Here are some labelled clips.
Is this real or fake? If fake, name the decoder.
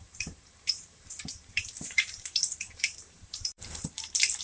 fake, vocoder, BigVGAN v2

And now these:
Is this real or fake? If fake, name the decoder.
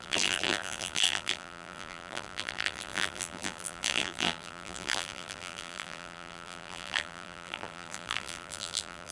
fake, vocoder, BigVGAN v2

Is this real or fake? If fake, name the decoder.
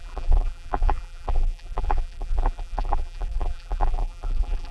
fake, vocoder, BigVGAN v2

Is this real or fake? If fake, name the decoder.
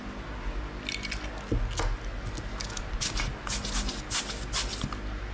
real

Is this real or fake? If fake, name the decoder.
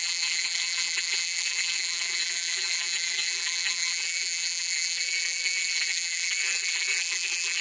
fake, vocoder, BigVGAN v2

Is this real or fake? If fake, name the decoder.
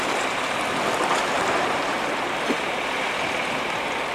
real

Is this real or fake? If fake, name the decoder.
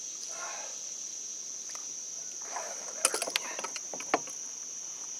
real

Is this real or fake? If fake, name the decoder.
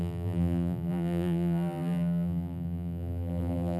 fake, vocoder, BigVGAN v2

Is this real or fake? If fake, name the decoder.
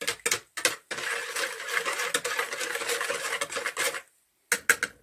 real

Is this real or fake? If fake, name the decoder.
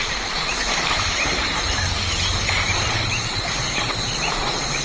fake, vocoder, BigVGAN v2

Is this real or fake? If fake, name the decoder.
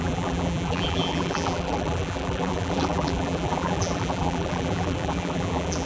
fake, vocoder, BigVGAN v2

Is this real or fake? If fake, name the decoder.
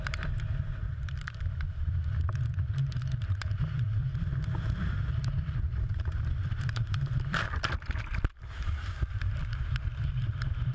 fake, vocoder, BigVGAN v2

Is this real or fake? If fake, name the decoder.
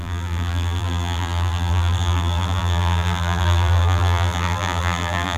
fake, vocoder, BigVGAN v2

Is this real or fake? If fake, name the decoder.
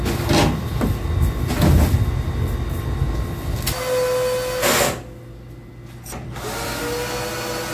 real